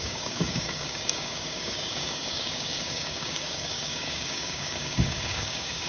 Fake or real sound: fake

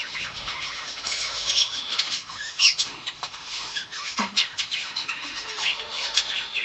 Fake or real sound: fake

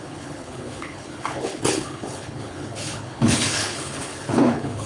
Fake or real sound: fake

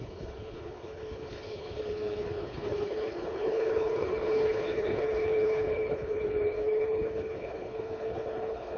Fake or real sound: fake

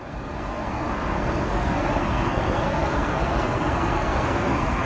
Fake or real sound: fake